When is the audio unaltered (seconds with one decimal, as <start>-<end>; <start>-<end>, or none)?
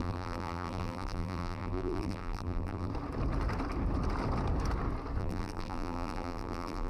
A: 2.9-5.2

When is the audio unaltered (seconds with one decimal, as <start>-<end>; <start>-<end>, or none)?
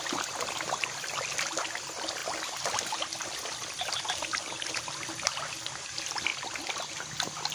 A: 0.0-2.2; 4.0-7.5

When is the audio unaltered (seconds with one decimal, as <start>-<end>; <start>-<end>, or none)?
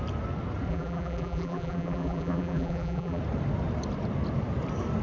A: 0.0-0.7; 3.2-5.0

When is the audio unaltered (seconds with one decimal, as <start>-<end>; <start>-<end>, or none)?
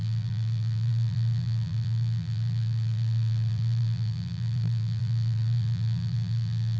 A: none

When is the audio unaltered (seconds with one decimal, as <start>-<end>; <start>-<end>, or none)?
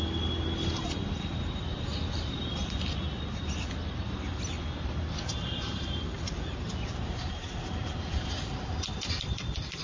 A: 0.0-1.6; 2.4-5.3; 8.7-9.8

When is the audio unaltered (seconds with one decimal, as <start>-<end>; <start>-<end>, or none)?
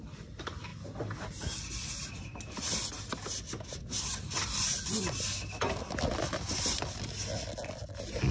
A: 0.0-8.3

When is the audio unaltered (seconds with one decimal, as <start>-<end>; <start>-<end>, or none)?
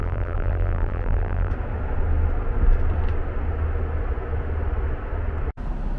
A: 1.5-6.0